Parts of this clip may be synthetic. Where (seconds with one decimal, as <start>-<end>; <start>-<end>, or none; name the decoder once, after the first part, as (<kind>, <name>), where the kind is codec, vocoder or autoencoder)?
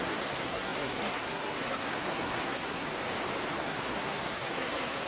0.0-2.9 (codec, SNAC); 3.5-5.1